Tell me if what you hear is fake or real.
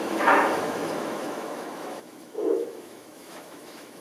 fake